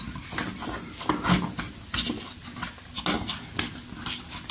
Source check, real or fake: real